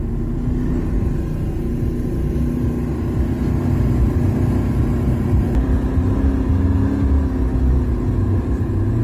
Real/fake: real